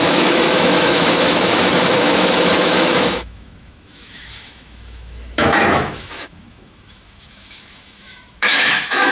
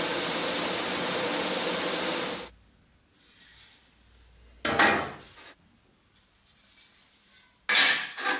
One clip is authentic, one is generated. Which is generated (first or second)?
first